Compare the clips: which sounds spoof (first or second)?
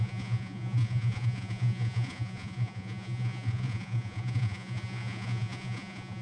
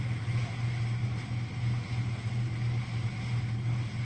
first